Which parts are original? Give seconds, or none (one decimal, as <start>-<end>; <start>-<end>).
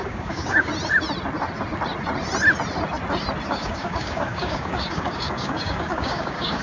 0.7-3.5